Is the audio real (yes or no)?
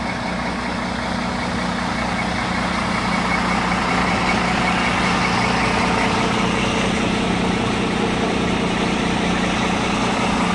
yes